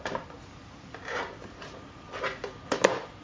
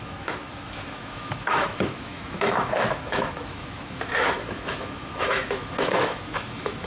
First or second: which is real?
first